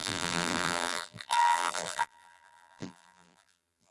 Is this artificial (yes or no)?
yes